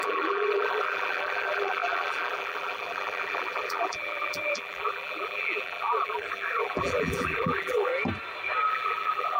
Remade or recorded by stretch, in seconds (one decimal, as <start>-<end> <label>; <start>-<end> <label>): 0.0-7.9 remade; 7.9-8.7 recorded; 8.7-9.4 remade